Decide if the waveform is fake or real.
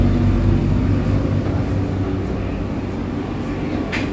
real